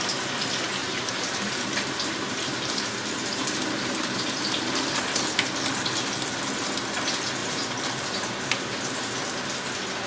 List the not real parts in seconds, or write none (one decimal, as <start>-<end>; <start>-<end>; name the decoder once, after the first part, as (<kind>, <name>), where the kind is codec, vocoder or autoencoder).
0.8-5.0 (vocoder, BigVGAN v2); 7.4-9.0